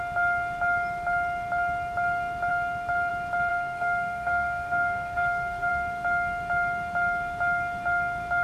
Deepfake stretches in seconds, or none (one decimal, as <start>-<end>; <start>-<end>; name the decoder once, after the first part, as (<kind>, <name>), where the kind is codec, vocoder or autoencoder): 3.5-5.7 (codec, SNAC)